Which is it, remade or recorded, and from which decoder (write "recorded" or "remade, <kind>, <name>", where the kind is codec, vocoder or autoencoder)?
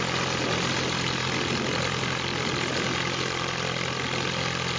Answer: recorded